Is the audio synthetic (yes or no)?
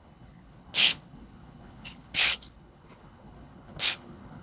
yes